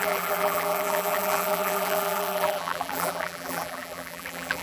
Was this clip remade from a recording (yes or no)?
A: yes